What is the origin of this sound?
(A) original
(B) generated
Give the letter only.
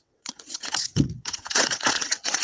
B